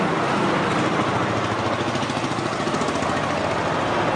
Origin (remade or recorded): recorded